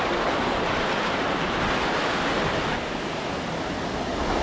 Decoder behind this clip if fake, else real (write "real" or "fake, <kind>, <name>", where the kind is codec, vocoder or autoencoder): real